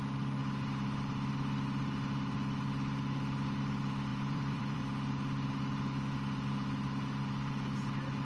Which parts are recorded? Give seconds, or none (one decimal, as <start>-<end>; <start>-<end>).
0.0-4.1; 4.8-8.2